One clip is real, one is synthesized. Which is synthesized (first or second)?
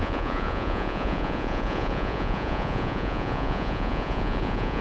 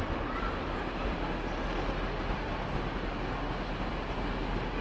first